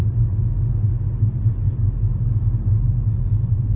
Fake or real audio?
real